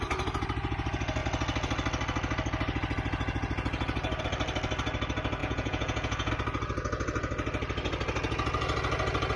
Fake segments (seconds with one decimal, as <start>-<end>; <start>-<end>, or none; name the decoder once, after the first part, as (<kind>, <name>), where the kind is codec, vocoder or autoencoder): 5.4-6.3 (vocoder, Vocos)